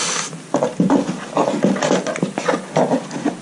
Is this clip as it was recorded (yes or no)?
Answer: yes